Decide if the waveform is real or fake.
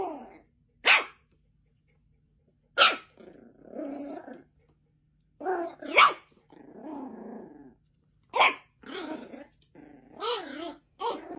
real